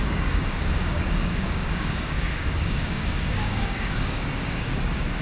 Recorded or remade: remade